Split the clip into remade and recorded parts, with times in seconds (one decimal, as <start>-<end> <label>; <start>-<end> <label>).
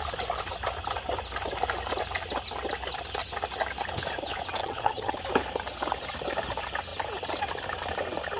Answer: 0.0-4.6 recorded; 4.6-5.2 remade; 5.2-8.4 recorded